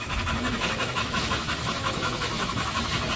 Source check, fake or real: fake